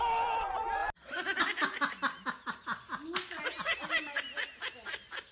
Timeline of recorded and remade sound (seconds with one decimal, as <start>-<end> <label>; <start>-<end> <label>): 0.0-5.3 recorded